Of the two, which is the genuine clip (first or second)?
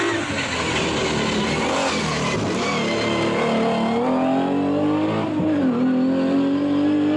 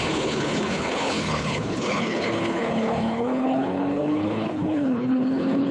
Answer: first